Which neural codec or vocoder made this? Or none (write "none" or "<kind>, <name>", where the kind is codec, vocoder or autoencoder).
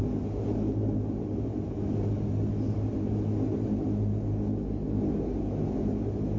none